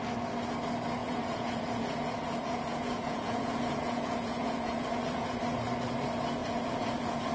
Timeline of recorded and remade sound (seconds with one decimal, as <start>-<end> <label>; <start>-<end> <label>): 0.0-1.0 recorded; 1.0-5.4 remade; 5.4-6.4 recorded; 6.4-7.3 remade